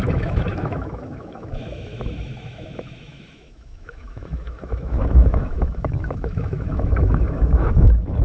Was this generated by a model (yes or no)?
yes